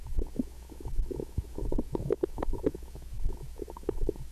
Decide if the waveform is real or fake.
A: fake